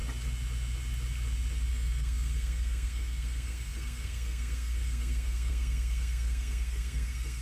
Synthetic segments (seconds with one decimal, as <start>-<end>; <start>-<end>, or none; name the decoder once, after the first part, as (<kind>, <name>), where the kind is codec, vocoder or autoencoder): 1.7-7.4 (codec, SNAC)